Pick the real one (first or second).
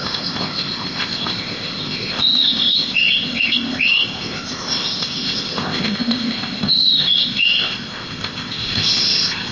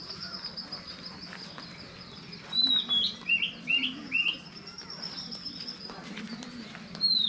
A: second